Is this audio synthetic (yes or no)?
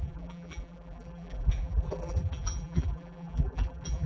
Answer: yes